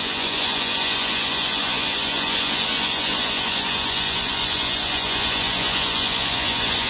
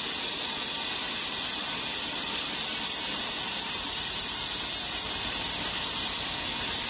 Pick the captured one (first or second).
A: second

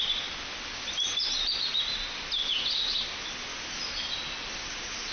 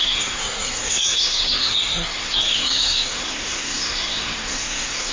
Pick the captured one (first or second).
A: first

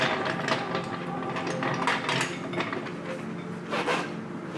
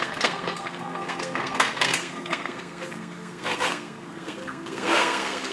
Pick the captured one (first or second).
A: first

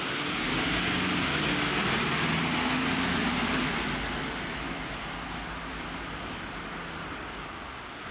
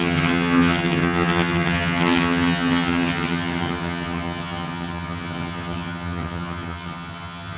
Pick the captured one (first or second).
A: first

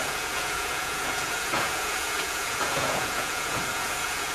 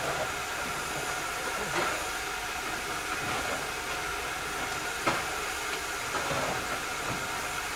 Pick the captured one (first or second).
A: second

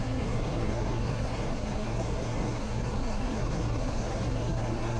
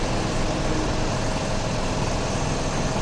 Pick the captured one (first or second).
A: second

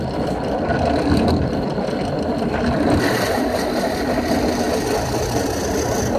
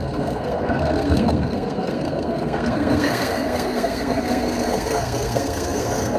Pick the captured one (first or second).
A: first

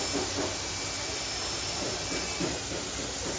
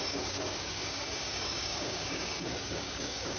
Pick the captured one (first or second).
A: first